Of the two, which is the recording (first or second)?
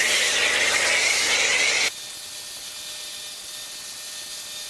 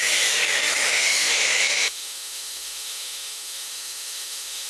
first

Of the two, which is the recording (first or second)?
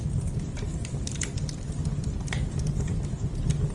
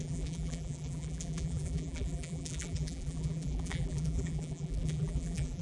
first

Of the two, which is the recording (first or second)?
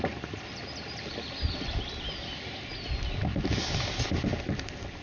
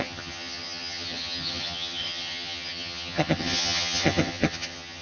first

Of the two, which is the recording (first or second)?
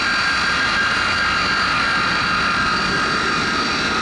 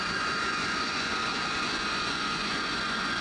first